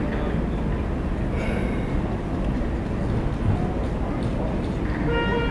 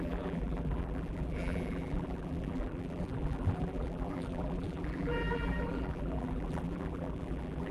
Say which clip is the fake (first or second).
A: second